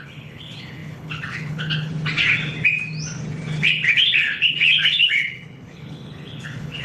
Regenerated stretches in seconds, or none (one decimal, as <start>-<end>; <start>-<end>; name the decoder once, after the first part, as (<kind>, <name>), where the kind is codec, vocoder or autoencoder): 0.0-1.9 (codec, HILCodec); 3.6-6.8